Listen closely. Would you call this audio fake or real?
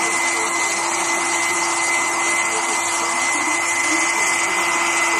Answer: real